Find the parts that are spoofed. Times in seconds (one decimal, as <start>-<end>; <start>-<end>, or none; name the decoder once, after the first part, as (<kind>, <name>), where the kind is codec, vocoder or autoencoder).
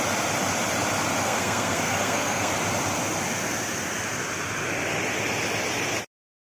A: 1.2-2.5 (codec, SNAC)